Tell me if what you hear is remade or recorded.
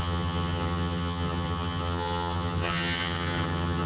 remade